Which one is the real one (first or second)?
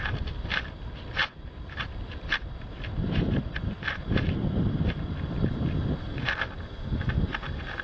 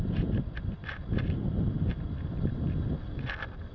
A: second